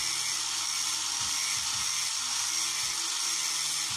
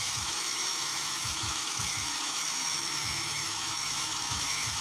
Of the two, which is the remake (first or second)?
second